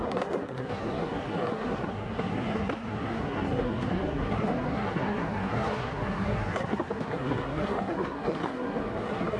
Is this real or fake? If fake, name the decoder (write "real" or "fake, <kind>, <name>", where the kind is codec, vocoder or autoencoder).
fake, codec, SNAC